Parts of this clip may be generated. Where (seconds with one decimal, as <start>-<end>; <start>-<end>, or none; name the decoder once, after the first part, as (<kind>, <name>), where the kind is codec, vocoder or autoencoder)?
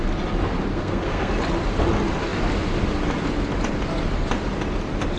0.7-1.3 (codec, SNAC)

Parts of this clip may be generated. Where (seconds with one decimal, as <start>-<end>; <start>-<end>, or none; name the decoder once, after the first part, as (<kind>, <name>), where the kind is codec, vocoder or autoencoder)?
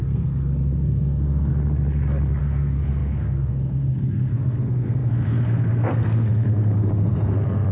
0.0-1.5 (codec, SNAC); 2.4-7.7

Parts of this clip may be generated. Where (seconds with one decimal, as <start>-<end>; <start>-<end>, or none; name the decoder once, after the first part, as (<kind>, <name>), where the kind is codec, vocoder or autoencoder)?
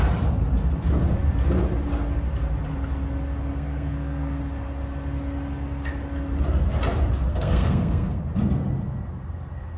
3.5-4.4 (codec, SNAC); 7.3-8.2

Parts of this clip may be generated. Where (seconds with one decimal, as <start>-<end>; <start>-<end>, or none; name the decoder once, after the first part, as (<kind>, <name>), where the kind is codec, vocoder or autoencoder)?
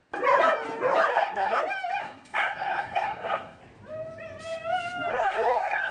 1.1-1.6 (codec, SNAC); 2.0-3.6; 5.1-5.9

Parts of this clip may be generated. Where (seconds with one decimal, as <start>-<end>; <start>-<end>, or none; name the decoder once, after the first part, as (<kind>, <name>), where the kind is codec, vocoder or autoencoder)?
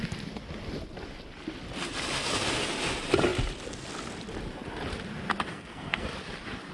5.5-6.1 (codec, SNAC)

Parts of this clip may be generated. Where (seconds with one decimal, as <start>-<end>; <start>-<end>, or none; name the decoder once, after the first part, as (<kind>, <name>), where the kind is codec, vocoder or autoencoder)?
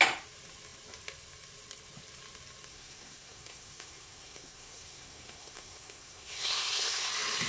2.7-7.1 (codec, SNAC)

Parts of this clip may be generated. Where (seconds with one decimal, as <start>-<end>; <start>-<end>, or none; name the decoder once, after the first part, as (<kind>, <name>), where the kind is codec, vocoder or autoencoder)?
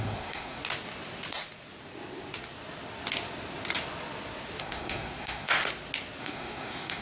0.0-0.6 (codec, SNAC); 4.6-5.6; 6.2-7.0